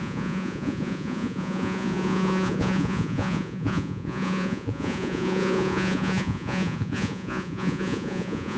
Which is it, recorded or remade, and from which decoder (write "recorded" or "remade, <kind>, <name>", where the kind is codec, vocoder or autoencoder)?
remade, vocoder, Vocos